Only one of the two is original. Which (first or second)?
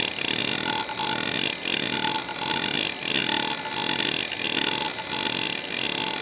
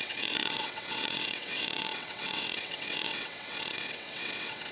first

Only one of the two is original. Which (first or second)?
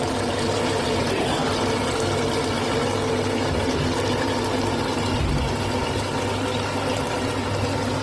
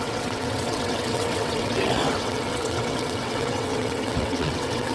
first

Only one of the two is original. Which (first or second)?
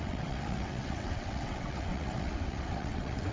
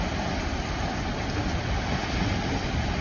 second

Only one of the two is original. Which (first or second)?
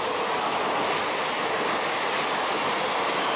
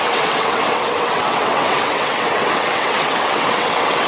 first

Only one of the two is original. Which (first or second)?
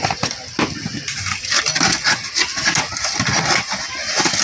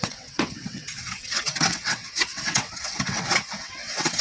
first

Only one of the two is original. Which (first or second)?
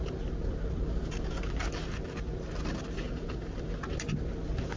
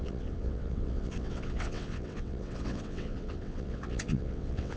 first